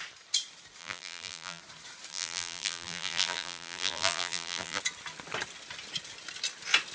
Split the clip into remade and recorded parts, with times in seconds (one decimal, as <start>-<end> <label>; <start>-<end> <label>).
0.0-0.8 recorded; 0.8-1.6 remade; 1.6-2.1 recorded; 2.1-4.8 remade; 4.8-6.9 recorded